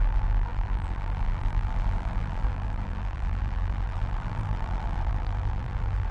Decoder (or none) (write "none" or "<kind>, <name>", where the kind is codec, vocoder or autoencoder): vocoder, BigVGAN v2